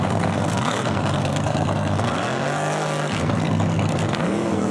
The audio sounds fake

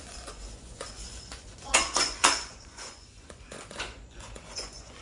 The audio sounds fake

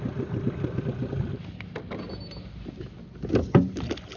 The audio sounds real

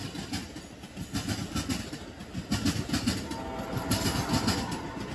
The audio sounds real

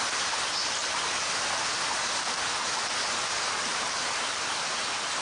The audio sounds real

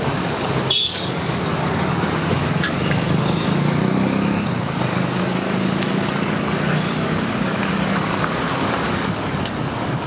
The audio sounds fake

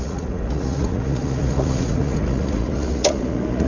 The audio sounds fake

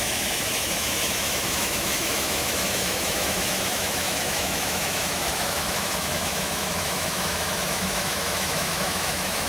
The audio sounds fake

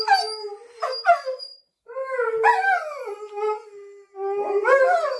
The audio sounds real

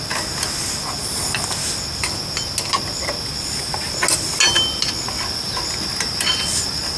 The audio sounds real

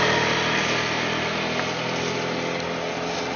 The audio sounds real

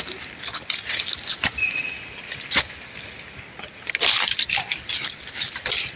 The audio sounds real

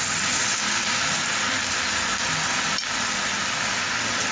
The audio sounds real